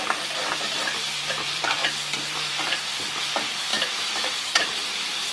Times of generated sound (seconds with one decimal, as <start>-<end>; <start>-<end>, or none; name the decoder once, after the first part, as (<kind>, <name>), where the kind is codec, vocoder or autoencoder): 0.0-5.3 (vocoder, BigVGAN v2)